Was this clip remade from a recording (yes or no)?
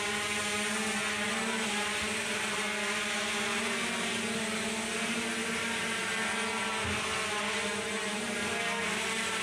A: no